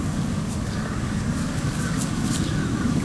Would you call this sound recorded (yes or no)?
no